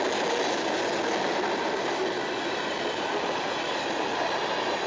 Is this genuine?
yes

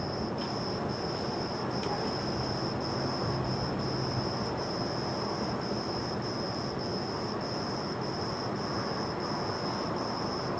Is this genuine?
yes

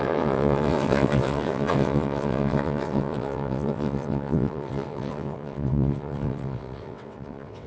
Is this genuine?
no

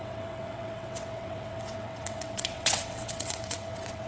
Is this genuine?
no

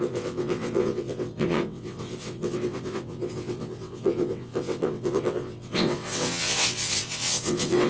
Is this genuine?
no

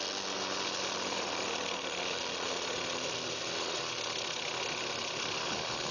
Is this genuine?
yes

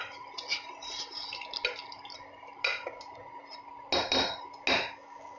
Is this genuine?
yes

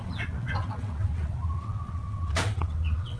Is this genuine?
no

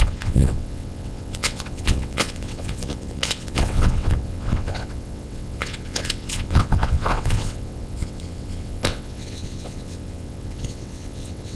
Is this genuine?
no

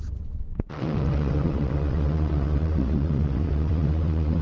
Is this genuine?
no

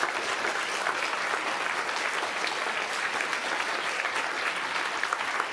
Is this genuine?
yes